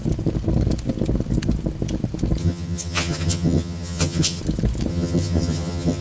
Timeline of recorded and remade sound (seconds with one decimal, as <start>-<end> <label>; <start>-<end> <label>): 0.0-2.4 recorded; 2.4-4.4 remade; 4.4-4.9 recorded; 4.9-6.0 remade